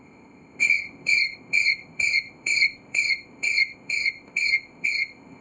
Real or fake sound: fake